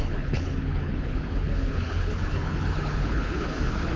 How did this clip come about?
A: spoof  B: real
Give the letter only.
A